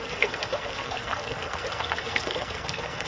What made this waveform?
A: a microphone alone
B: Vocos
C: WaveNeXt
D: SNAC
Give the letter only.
D